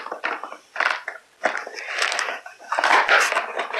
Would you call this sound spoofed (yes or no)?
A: no